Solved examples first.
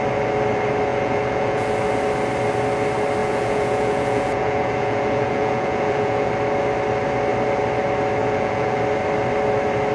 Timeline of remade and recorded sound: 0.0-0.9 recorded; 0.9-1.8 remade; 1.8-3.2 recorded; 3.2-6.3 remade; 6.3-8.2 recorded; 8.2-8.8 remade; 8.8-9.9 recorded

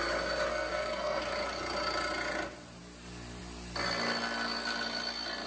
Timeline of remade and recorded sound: 0.0-0.5 recorded; 0.5-1.2 remade; 1.2-5.5 recorded

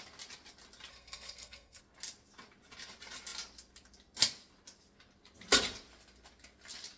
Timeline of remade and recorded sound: 0.0-0.9 recorded; 0.9-1.8 remade; 1.8-7.0 recorded

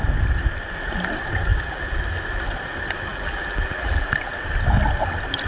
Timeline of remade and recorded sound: 0.0-1.5 recorded; 1.5-2.0 remade; 2.0-3.1 recorded; 3.1-4.1 remade; 4.1-5.5 recorded

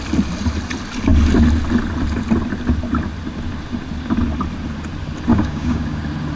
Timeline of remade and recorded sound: 0.0-5.3 recorded; 5.3-6.0 remade; 6.0-6.4 recorded